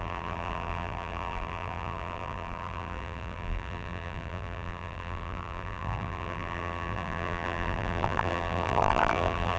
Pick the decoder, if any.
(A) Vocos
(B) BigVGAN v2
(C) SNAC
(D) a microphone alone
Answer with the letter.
B